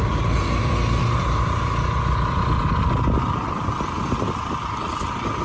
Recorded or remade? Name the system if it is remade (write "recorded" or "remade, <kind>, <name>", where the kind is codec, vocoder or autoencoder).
recorded